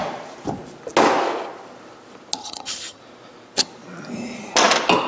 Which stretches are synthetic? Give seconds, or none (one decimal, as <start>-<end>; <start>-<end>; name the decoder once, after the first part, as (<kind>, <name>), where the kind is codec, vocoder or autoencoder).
2.4-3.0 (vocoder, HiFi-GAN)